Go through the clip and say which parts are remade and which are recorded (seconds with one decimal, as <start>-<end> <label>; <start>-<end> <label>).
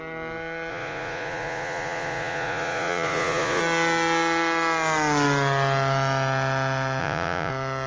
0.0-0.7 recorded; 0.7-3.6 remade; 3.6-7.0 recorded; 7.0-7.5 remade; 7.5-7.9 recorded